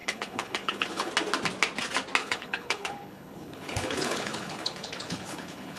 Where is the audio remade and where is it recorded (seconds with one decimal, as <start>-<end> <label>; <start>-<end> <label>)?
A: 0.0-1.1 remade; 1.1-2.2 recorded; 2.2-5.8 remade